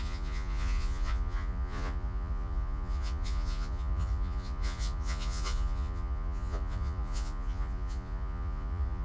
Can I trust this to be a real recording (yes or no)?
no